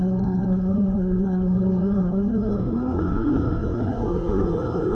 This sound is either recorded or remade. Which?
remade